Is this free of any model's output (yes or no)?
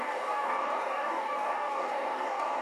no